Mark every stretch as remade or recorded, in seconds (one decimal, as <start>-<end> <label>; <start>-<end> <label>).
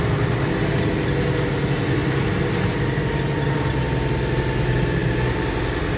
0.0-6.0 recorded